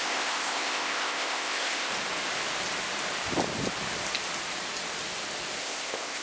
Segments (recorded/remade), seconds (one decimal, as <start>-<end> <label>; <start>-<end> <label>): 0.0-1.9 remade; 1.9-5.6 recorded; 5.6-6.2 remade